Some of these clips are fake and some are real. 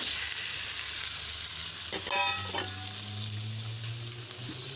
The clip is real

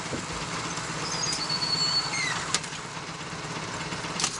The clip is fake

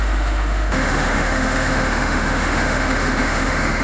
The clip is fake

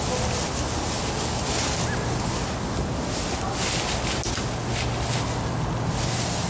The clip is real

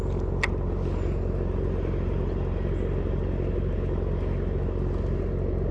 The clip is real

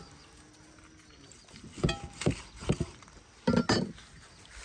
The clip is real